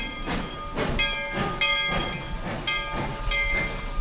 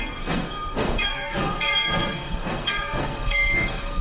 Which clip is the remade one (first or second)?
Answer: second